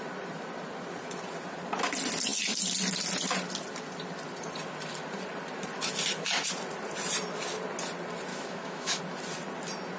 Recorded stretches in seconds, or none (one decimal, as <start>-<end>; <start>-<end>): 0.0-8.3; 9.0-10.0